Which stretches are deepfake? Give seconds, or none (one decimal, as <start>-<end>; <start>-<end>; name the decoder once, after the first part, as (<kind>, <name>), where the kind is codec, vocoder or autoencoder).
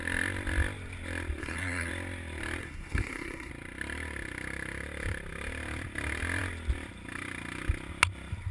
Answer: 1.4-1.9 (codec, SNAC); 2.6-3.5